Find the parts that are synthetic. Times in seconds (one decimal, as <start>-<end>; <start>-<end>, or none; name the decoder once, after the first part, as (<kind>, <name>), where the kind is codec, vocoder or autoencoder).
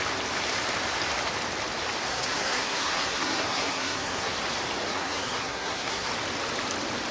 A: 2.1-4.3 (codec, SNAC); 4.9-6.1